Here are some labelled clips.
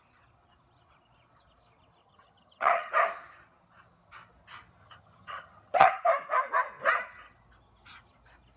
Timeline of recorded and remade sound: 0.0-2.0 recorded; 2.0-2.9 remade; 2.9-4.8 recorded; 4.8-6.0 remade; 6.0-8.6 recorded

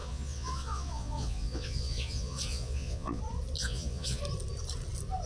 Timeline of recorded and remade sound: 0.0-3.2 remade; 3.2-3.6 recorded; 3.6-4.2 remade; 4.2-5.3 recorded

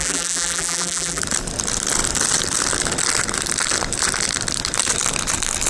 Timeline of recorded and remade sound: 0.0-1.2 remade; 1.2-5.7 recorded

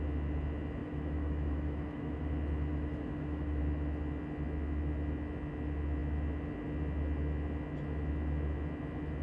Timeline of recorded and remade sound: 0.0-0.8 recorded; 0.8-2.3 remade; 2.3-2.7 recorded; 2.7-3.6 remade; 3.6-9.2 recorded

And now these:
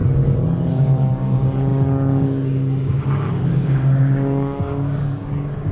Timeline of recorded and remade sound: 0.0-0.7 recorded; 0.7-5.7 remade

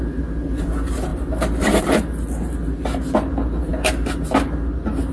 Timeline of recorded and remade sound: 0.0-5.1 recorded